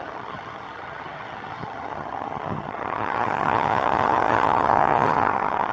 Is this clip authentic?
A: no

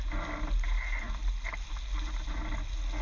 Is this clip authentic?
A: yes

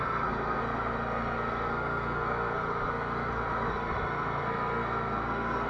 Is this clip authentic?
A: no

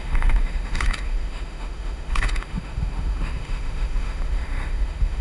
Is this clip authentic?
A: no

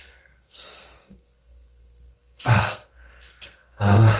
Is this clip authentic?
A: no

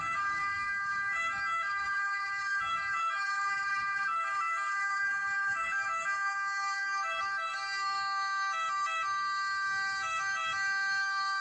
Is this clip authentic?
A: no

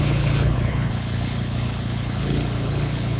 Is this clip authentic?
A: no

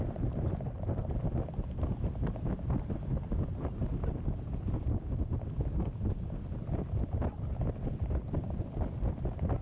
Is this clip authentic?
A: yes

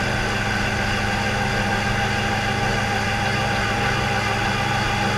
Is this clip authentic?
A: yes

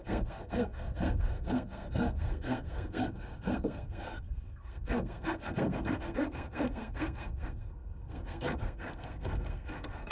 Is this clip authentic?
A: no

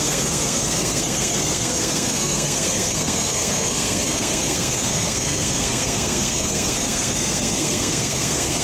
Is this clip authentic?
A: no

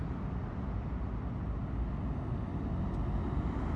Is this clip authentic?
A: yes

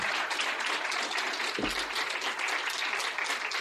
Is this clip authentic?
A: yes